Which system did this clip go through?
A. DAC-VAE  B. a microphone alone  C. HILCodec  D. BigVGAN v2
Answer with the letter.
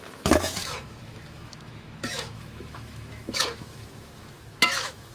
A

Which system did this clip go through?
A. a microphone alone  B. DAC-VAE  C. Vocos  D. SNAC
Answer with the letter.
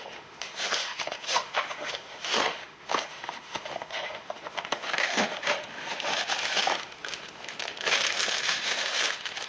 B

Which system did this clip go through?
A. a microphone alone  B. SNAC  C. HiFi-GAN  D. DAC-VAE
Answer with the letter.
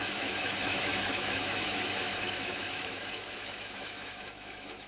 D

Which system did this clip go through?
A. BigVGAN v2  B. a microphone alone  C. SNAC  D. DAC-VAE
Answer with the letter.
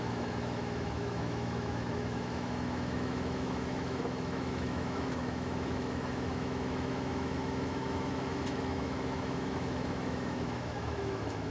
D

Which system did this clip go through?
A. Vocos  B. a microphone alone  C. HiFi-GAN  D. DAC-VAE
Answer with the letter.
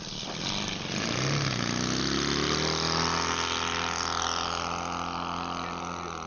B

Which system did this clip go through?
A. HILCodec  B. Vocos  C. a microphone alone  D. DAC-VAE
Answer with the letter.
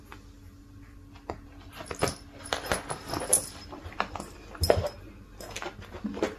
C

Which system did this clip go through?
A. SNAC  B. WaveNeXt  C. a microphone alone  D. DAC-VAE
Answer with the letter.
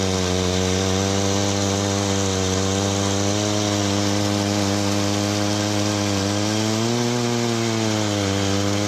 C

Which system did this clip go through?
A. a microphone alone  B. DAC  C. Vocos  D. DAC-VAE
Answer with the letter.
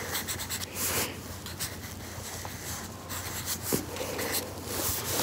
A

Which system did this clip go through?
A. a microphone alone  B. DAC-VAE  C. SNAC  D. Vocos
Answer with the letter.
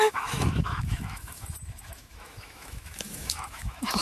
B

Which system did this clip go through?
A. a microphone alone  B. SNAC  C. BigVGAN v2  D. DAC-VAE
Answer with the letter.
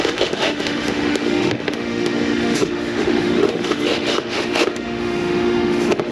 D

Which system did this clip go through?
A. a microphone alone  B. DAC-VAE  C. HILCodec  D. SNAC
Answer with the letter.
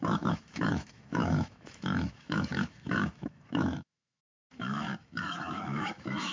B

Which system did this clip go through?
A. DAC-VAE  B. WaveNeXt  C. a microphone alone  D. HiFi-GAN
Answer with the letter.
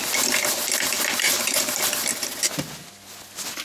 C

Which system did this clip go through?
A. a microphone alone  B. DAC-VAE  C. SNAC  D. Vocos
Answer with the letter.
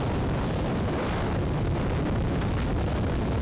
A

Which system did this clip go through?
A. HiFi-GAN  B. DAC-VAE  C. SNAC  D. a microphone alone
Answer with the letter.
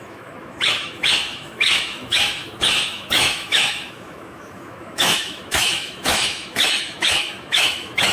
B